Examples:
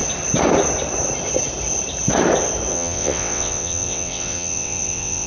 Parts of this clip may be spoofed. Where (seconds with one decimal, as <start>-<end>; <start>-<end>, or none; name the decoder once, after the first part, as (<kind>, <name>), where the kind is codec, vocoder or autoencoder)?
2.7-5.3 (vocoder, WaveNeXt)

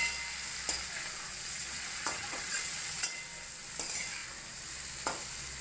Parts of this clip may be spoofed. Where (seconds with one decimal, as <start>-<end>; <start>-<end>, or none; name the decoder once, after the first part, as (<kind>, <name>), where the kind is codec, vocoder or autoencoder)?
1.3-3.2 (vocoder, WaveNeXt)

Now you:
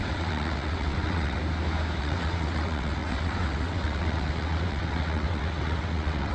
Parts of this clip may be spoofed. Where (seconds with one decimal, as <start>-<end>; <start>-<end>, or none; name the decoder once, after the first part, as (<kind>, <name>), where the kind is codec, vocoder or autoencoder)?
0.0-1.4 (vocoder, WaveNeXt); 2.0-6.3

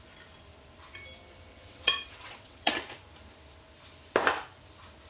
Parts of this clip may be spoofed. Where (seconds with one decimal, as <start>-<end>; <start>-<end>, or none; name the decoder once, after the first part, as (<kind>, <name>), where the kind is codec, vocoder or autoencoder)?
1.5-2.7 (vocoder, WaveNeXt)

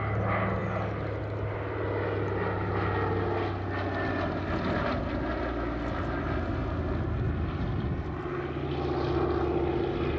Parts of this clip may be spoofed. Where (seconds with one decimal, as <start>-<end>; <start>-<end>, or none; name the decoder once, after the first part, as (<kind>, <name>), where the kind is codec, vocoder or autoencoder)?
none

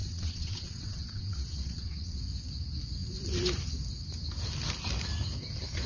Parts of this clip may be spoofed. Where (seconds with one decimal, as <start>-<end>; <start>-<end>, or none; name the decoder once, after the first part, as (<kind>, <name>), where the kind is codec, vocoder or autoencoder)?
0.0-2.2 (vocoder, WaveNeXt)